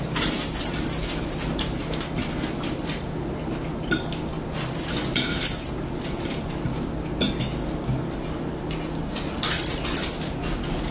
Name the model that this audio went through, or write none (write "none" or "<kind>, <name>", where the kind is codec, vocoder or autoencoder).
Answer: none